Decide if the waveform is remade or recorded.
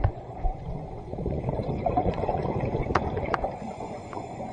remade